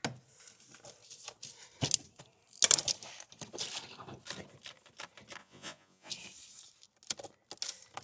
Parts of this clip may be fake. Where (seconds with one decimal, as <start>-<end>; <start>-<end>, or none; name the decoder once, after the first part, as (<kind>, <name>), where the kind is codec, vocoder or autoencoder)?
5.4-6.1 (vocoder, Vocos)